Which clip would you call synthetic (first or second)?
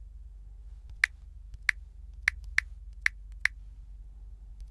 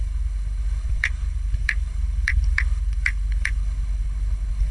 second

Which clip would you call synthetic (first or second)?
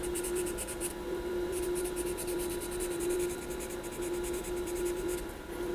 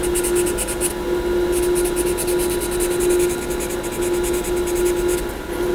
first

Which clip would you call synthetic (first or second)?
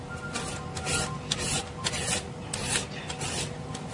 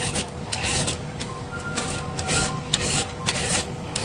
second